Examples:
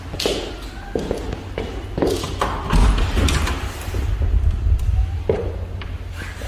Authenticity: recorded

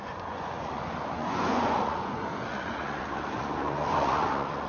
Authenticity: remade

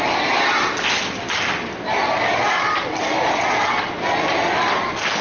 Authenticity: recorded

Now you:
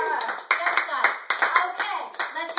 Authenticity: recorded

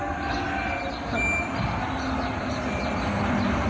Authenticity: recorded